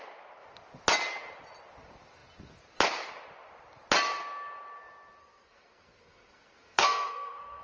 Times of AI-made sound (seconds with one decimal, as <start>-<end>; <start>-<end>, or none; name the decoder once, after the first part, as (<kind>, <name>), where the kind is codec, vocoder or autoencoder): 5.2-7.6 (codec, SNAC)